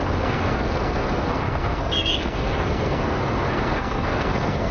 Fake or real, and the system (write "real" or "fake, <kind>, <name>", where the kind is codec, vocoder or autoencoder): fake, codec, SNAC